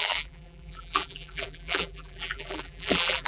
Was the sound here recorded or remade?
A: remade